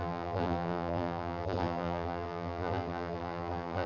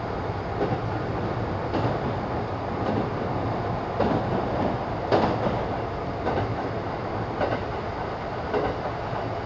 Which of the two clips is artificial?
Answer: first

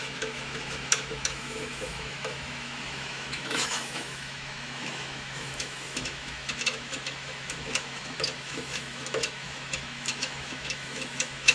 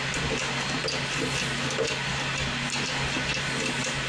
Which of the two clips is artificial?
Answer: first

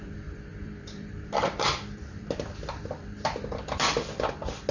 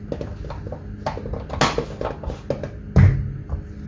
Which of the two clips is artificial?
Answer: first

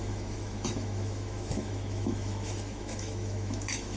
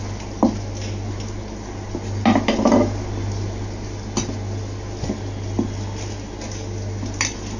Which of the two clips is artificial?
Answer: first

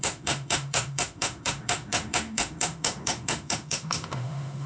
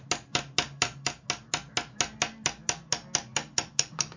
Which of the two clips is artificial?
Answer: first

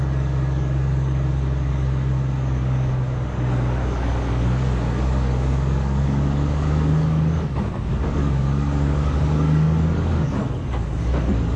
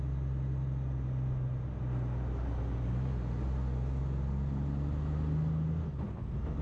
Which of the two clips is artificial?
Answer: first